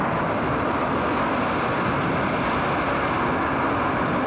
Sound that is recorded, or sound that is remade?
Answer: recorded